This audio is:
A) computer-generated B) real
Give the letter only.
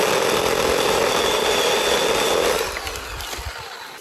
B